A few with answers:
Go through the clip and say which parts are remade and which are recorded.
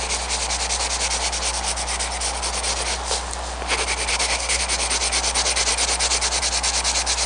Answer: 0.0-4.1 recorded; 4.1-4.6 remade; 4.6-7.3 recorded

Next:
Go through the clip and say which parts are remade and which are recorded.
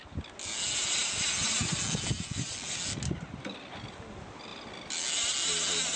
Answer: 0.0-6.0 recorded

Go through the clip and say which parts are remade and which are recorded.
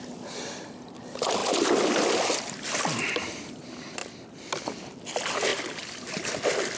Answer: 0.0-6.8 recorded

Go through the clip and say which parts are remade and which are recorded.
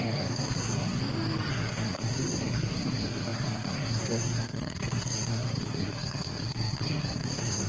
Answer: 0.0-1.0 remade; 1.0-1.5 recorded; 1.5-7.7 remade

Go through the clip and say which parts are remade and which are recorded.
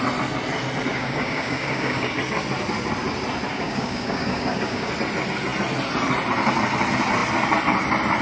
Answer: 0.0-0.9 recorded; 0.9-2.2 remade; 2.2-3.5 recorded; 3.5-4.9 remade; 4.9-8.2 recorded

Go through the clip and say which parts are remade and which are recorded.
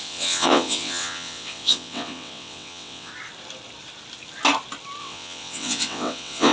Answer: 0.0-3.1 remade; 3.1-5.0 recorded; 5.0-6.5 remade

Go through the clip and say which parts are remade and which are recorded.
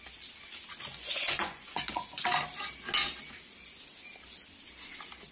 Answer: 0.0-0.9 recorded; 0.9-2.2 remade; 2.2-5.3 recorded